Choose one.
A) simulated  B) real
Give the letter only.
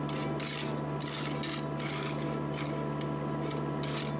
B